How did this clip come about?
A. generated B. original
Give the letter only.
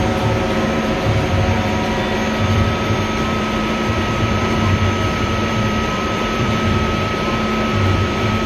A